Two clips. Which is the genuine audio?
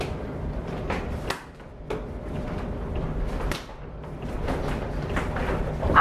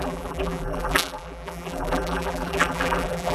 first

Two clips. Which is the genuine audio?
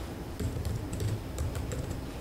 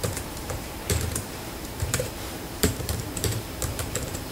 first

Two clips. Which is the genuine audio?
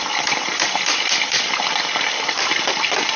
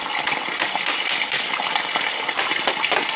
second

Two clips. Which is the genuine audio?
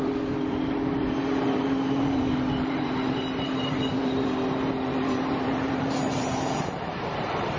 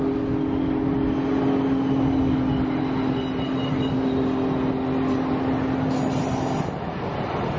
second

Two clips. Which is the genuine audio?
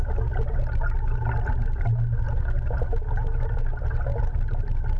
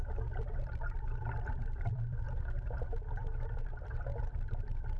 first